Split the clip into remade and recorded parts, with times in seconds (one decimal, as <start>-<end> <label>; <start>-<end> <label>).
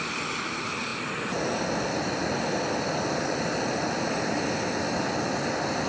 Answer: 0.0-5.9 recorded